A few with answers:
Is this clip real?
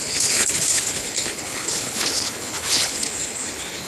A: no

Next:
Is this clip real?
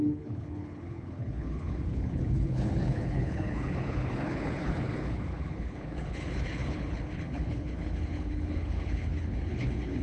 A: no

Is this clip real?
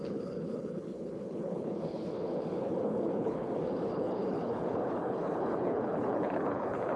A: no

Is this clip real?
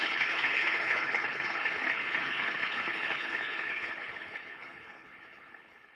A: no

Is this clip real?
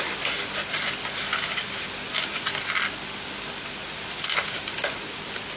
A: yes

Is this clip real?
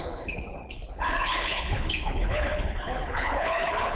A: no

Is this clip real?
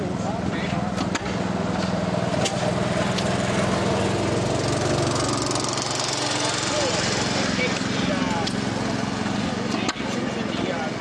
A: yes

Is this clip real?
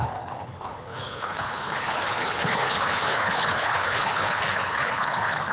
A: no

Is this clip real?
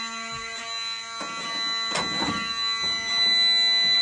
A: yes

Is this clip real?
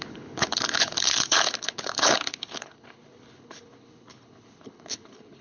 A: no